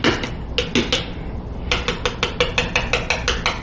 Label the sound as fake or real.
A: real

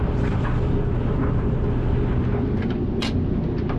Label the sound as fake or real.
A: real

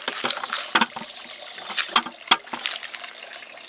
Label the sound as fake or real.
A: real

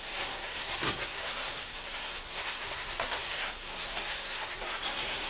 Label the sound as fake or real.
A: fake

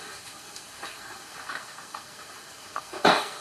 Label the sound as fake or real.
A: fake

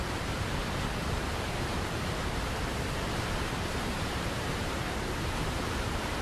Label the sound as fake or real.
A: fake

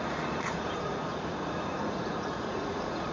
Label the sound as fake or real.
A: fake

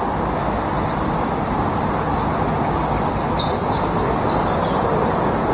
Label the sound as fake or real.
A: real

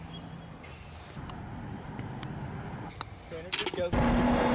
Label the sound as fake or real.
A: real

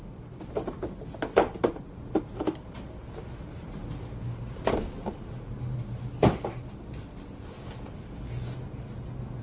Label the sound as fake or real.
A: real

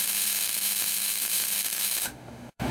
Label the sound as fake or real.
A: fake